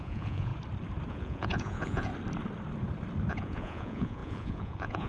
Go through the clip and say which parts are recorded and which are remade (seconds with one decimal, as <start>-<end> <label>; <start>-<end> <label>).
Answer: 0.0-0.5 remade; 0.5-1.1 recorded; 1.1-2.1 remade; 2.1-3.3 recorded; 3.3-5.1 remade